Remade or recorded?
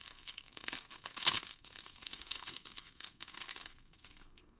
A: remade